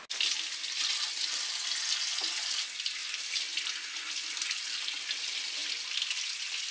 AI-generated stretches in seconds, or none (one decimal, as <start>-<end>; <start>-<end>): none